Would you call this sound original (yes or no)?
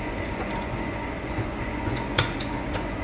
no